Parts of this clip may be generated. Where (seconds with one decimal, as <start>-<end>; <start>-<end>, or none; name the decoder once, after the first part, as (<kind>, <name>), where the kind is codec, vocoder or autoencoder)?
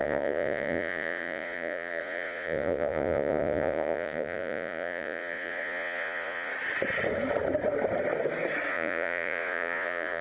0.0-6.5 (vocoder, Vocos); 8.7-10.2